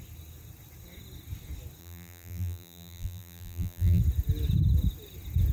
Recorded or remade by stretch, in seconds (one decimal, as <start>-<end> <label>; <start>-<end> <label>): 0.0-1.8 recorded; 1.8-4.0 remade; 4.0-5.5 recorded